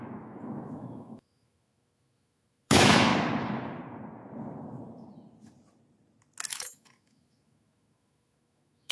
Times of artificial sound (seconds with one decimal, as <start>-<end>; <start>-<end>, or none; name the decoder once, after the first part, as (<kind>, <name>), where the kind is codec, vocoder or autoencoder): 0.0-3.1 (autoencoder, DAC-VAE); 6.5-8.9